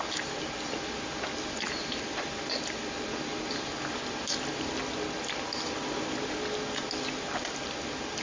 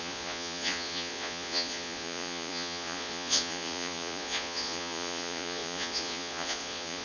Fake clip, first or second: second